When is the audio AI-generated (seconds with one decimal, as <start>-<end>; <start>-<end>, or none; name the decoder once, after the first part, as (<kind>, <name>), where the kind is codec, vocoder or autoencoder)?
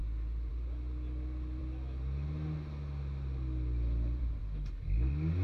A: none